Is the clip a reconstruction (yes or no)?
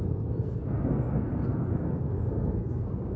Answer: yes